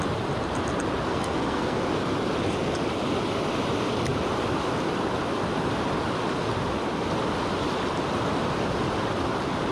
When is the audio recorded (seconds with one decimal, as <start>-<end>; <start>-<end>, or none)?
0.0-1.1; 1.8-9.7